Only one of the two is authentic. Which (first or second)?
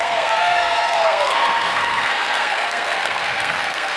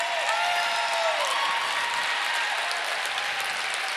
second